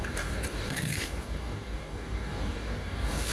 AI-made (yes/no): yes